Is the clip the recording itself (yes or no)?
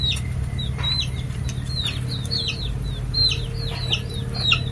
yes